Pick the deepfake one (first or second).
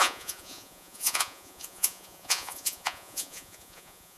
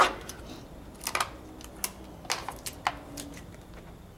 first